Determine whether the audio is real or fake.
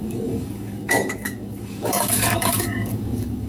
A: fake